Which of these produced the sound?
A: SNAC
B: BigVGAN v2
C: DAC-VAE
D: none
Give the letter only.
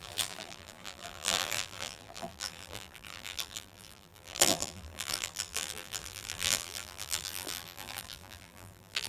B